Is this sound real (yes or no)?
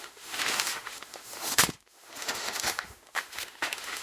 no